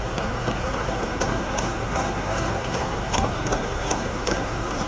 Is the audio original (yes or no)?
no